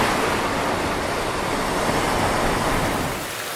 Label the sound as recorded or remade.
recorded